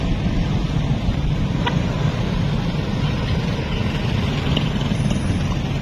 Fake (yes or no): no